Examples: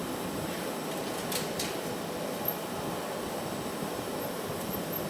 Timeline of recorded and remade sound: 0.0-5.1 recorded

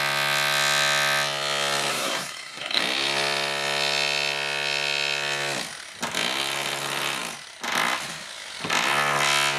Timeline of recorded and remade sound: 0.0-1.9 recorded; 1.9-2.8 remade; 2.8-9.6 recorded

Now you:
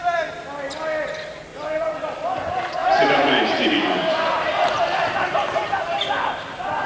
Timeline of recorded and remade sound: 0.0-1.5 recorded; 1.5-2.2 remade; 2.2-2.8 recorded; 2.8-6.9 remade

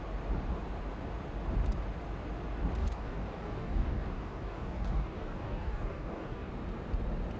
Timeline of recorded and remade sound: 0.0-2.8 recorded; 2.8-6.5 remade; 6.5-7.4 recorded